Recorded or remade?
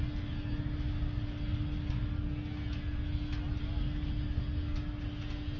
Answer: recorded